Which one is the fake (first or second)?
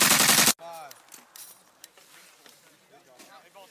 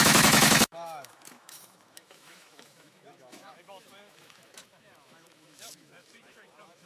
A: second